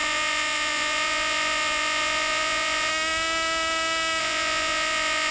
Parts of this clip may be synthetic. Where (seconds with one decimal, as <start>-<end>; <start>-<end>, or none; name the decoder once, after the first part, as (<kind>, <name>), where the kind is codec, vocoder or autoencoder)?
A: 0.0-2.9 (vocoder, Vocos); 4.2-5.3